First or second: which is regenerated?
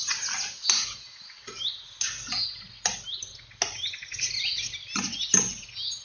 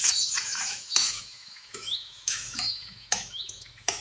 second